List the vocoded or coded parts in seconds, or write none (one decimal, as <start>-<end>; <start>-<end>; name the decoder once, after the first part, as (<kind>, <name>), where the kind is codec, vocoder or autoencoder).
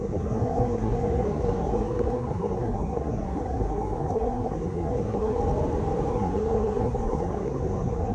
0.0-5.4 (codec, SNAC); 6.1-8.1